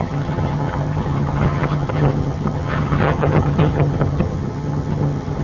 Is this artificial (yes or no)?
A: yes